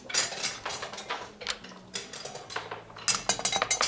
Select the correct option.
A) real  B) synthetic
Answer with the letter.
A